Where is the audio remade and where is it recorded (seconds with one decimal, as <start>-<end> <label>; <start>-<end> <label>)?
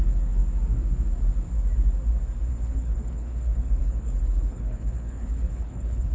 0.0-0.4 remade; 0.4-2.5 recorded; 2.5-6.1 remade